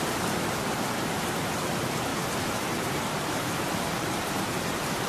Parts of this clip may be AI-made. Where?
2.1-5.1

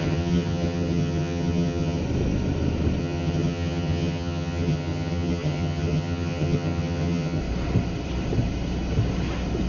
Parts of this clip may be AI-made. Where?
0.0-2.0; 3.0-7.4